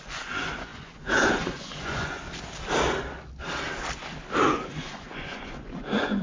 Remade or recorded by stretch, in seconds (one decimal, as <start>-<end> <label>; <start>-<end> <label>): 0.0-2.2 remade; 2.2-4.4 recorded; 4.4-6.2 remade

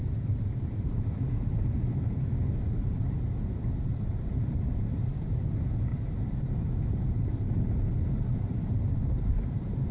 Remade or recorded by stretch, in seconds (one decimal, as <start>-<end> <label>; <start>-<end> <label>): 0.0-9.9 remade